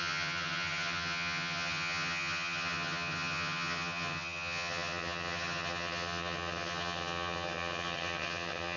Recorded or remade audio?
remade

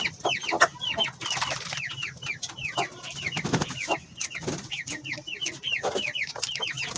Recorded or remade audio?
recorded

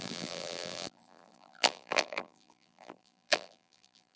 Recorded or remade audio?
remade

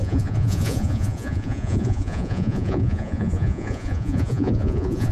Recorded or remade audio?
remade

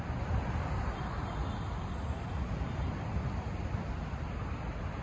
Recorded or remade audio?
recorded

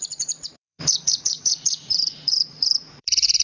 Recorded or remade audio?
remade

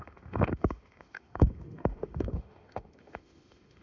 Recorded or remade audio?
remade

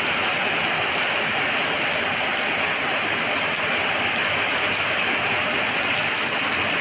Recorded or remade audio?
recorded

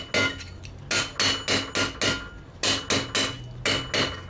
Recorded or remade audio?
recorded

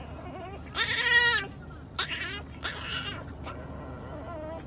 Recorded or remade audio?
recorded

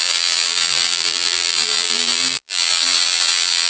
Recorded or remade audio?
remade